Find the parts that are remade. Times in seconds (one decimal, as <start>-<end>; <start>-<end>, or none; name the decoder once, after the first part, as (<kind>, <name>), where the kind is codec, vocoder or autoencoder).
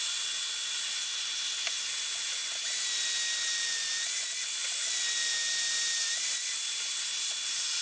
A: none